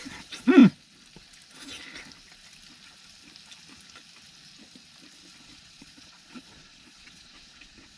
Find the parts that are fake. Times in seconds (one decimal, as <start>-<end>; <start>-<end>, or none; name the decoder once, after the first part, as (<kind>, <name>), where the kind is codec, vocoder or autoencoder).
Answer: 0.0-0.6 (vocoder, Vocos); 5.4-8.0